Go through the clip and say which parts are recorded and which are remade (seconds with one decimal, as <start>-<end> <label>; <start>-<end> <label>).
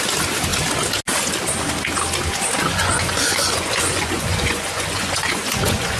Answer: 0.0-2.7 recorded; 2.7-6.0 remade